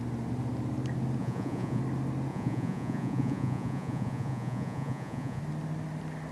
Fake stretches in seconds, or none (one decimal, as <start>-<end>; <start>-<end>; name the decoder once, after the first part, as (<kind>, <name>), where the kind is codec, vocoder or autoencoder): 1.2-1.8 (vocoder, Vocos); 2.3-5.4